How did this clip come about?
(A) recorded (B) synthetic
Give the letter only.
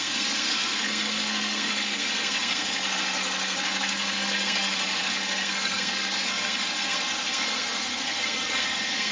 B